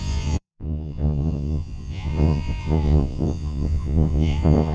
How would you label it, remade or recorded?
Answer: remade